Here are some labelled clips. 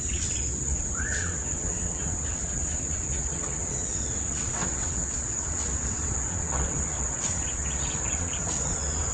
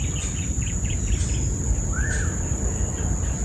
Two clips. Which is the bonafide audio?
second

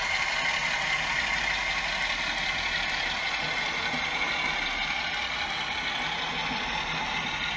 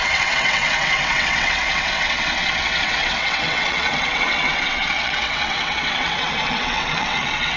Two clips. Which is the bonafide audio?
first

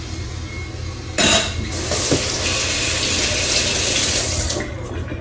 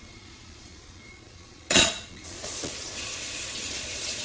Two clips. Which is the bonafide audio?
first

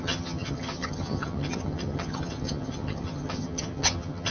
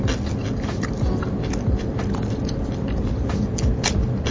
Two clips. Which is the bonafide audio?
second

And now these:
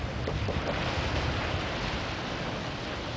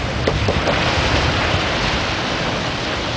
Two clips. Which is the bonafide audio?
first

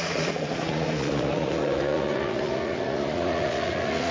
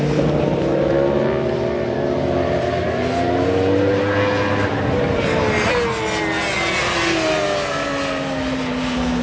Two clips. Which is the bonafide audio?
second